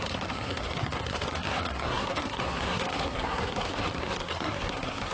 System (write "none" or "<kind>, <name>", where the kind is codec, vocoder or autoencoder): codec, SNAC